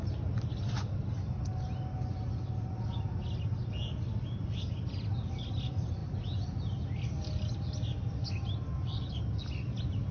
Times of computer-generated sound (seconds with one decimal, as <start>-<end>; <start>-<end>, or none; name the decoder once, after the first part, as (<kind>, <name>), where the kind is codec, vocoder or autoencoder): none